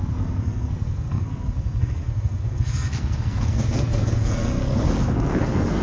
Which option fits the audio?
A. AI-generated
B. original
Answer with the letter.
A